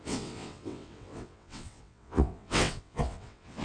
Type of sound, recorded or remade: remade